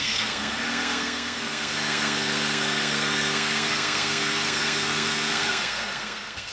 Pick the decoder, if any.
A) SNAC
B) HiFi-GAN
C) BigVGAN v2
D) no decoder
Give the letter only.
A